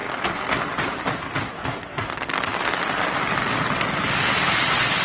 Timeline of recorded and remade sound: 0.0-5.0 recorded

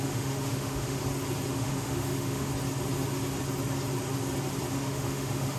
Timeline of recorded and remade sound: 0.0-1.0 remade; 1.0-1.5 recorded; 1.5-2.5 remade; 2.5-4.7 recorded; 4.7-5.6 remade

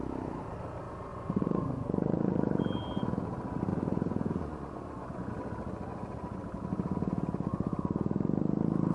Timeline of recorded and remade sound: 0.0-1.1 recorded; 1.1-2.6 remade; 2.6-3.7 recorded; 3.7-5.3 remade; 5.3-5.9 recorded; 5.9-6.4 remade; 6.4-8.9 recorded

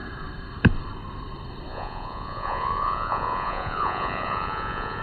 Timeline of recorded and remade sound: 0.0-1.7 recorded; 1.7-5.0 remade

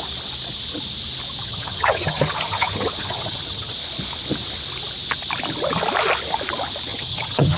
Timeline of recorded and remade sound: 0.0-1.4 recorded; 1.4-3.7 remade; 3.7-6.9 recorded; 6.9-7.6 remade

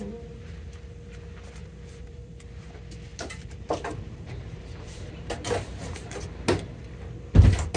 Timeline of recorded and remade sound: 0.0-1.6 recorded; 1.6-2.5 remade; 2.5-3.1 recorded; 3.1-6.2 remade; 6.2-7.8 recorded

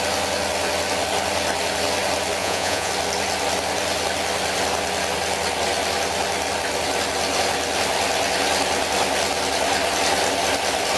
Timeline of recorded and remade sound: 0.0-2.4 recorded; 2.4-2.9 remade; 2.9-11.0 recorded

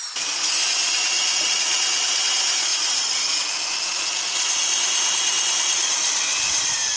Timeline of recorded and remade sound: 0.0-7.0 recorded